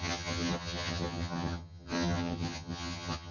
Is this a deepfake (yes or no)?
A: yes